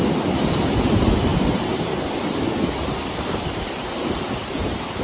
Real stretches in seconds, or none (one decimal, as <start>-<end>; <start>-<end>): 0.0-5.0